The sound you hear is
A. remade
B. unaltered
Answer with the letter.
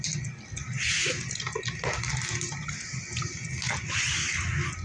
B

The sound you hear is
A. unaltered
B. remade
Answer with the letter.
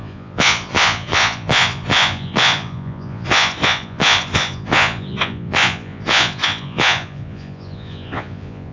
B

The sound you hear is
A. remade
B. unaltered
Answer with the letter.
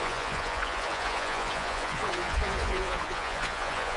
A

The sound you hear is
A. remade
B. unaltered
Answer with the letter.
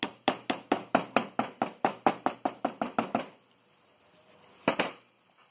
B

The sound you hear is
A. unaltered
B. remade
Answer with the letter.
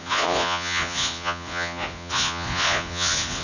B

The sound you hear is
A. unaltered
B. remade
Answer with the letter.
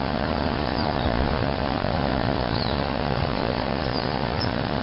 B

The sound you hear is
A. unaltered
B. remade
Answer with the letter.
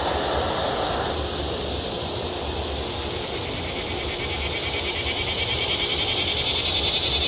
A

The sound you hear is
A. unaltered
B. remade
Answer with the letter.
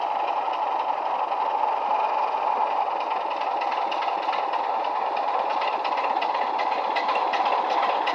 A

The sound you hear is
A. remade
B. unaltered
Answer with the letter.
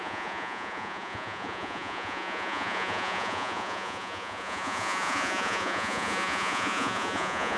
A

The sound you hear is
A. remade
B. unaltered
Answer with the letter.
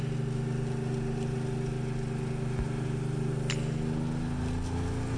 B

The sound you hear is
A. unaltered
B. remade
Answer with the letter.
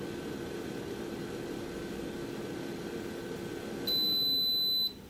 A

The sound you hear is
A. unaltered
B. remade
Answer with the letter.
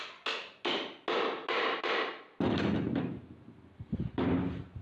A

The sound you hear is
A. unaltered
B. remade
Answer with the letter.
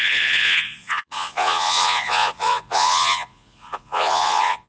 B